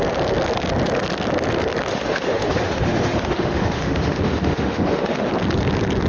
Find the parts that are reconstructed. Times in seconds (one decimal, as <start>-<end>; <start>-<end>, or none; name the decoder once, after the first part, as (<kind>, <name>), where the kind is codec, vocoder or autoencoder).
1.9-5.3 (autoencoder, DAC-VAE)